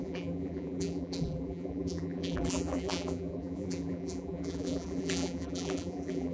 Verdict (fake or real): fake